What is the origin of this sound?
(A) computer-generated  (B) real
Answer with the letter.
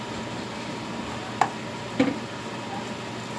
B